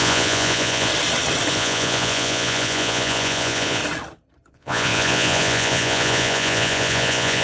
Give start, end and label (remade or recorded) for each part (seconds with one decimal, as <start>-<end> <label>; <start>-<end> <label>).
0.0-0.9 remade; 0.9-1.5 recorded; 1.5-3.8 remade; 3.8-4.5 recorded; 4.5-7.4 remade

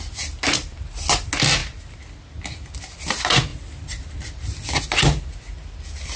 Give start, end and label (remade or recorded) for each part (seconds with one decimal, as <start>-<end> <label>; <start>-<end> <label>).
0.0-6.2 recorded

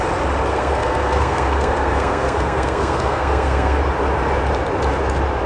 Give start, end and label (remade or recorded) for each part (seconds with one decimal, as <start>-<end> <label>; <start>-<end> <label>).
0.0-0.5 recorded; 0.5-3.8 remade; 3.8-5.5 recorded

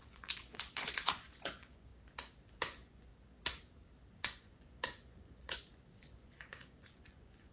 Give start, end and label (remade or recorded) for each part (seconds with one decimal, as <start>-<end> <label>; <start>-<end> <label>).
0.0-1.9 remade; 1.9-2.6 recorded; 2.6-3.1 remade; 3.1-4.1 recorded; 4.1-7.5 remade